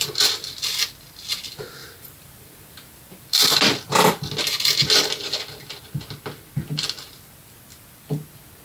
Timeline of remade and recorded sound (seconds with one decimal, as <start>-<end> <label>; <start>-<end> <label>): 0.0-1.8 recorded; 1.8-3.5 remade; 3.5-8.6 recorded